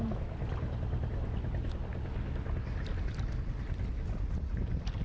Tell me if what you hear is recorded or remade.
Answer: recorded